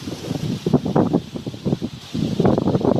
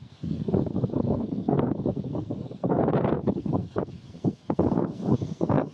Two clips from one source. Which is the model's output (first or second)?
second